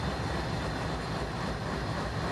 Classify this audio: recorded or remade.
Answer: recorded